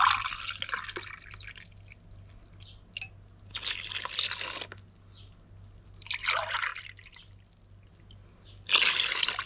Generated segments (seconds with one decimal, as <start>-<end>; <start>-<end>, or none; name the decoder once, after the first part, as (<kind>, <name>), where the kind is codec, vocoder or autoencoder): none